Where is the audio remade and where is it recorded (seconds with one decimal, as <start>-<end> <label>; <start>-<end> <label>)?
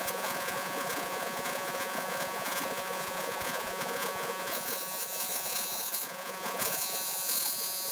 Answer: 0.0-7.9 remade